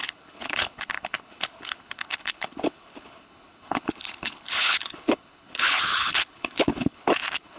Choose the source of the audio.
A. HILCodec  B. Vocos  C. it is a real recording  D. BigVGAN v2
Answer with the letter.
A